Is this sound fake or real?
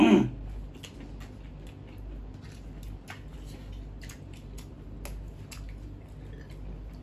real